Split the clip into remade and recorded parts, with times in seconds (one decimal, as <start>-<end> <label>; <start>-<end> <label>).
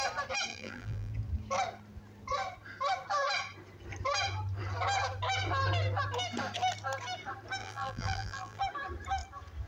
0.0-0.5 recorded; 0.5-1.1 remade; 1.1-7.6 recorded; 7.6-8.6 remade; 8.6-9.7 recorded